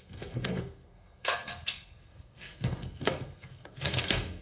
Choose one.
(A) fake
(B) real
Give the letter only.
A